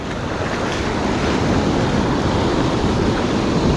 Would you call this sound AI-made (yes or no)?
no